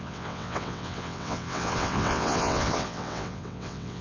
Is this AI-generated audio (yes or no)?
yes